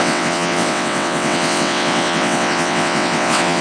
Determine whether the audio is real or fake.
fake